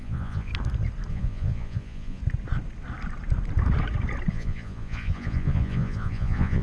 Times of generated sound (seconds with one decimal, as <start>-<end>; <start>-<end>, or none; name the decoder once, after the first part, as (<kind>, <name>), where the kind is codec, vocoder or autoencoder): 0.0-0.5 (vocoder, Vocos); 1.1-2.2; 4.3-6.6

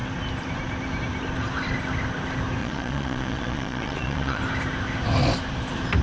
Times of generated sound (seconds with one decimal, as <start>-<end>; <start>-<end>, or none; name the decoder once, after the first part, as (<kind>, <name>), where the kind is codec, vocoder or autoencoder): 2.6-4.4 (vocoder, Vocos)

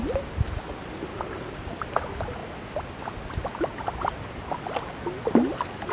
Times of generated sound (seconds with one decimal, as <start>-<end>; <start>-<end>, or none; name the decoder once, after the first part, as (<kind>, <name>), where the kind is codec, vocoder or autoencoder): none

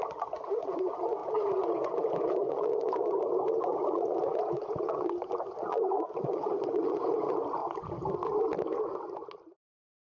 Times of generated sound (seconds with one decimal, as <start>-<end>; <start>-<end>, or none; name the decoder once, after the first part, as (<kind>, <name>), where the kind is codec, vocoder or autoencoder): 0.0-7.6 (vocoder, Vocos)

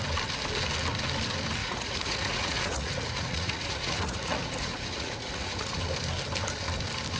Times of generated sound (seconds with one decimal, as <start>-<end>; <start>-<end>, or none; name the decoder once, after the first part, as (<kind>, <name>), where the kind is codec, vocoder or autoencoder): 1.6-5.8 (vocoder, Vocos)

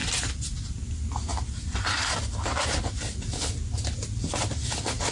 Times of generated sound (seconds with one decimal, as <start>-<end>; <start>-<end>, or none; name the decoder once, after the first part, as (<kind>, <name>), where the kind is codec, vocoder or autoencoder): none

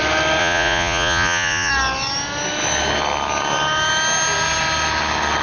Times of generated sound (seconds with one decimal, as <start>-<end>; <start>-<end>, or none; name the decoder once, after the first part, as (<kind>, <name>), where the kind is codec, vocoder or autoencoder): 0.4-1.7 (vocoder, Vocos)

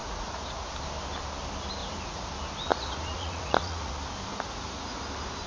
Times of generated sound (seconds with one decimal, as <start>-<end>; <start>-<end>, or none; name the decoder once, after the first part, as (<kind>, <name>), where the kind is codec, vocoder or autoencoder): 0.0-0.7 (vocoder, Vocos); 1.8-2.3; 2.7-3.9; 4.3-5.0